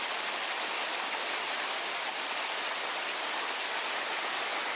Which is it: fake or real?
real